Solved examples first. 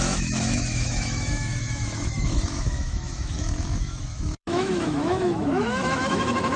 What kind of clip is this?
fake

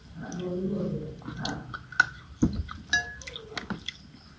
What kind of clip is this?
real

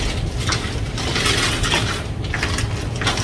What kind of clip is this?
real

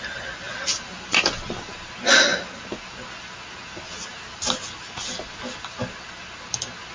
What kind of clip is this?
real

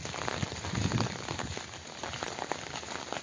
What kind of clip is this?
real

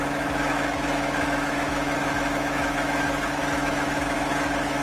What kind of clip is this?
fake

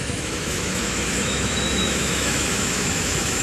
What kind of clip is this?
fake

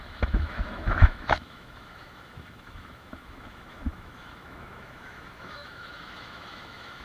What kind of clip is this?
fake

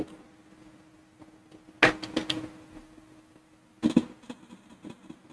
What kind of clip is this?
real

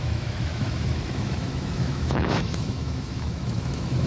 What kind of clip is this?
fake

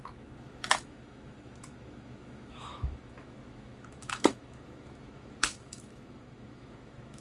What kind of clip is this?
fake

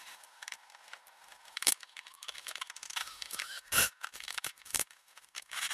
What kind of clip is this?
fake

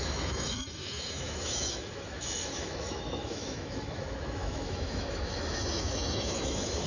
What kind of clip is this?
fake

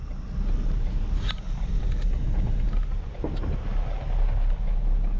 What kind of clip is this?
real